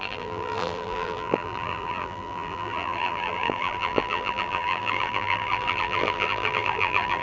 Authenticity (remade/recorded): remade